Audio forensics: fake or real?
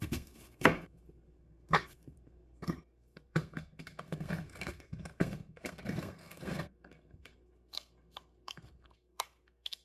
fake